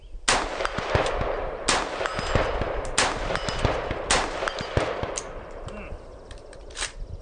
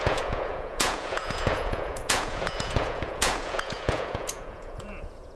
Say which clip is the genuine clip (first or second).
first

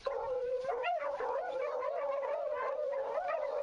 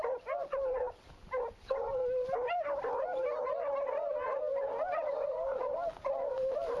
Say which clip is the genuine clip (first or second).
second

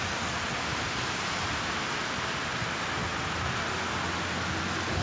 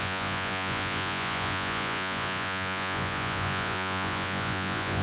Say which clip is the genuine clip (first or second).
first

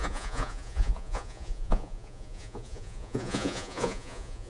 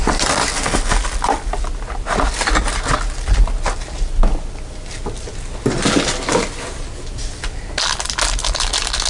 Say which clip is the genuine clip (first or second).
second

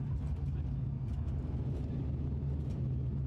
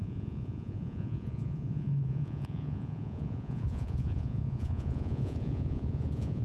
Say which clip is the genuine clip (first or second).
first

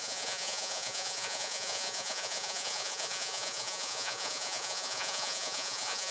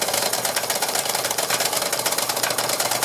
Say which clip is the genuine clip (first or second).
second